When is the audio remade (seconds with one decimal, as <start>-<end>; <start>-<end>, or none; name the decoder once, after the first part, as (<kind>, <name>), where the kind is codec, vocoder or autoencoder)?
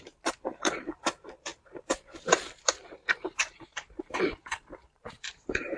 0.0-5.8 (vocoder, BigVGAN v2)